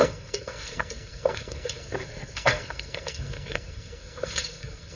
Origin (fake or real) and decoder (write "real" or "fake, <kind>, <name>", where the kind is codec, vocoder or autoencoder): fake, codec, SNAC